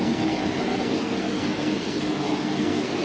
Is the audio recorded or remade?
remade